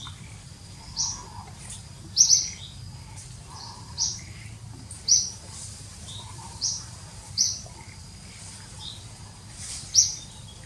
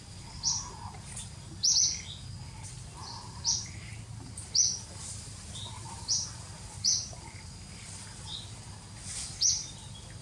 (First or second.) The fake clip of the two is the first